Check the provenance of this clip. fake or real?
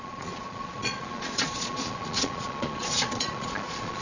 fake